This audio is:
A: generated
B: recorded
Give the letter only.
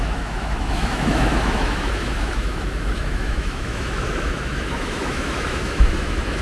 A